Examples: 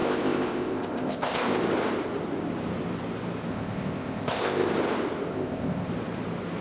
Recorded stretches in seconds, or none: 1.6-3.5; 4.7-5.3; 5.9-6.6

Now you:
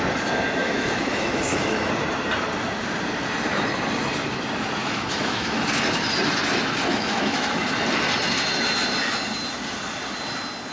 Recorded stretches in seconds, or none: 0.0-0.6; 1.9-4.8; 5.6-6.9; 7.6-10.7

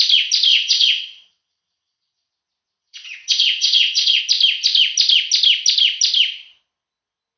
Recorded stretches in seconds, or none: 0.0-0.5; 2.3-2.8; 4.2-7.4

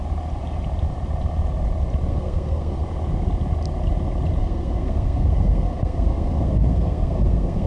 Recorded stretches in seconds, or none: 0.0-2.1; 2.8-4.4

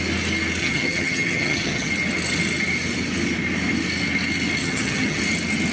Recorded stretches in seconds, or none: 0.0-0.6; 1.9-4.6; 5.2-5.7